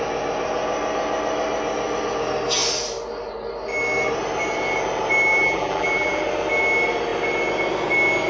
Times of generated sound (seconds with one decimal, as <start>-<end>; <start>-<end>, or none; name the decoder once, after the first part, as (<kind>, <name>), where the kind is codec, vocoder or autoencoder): 5.3-6.2 (vocoder, BigVGAN v2)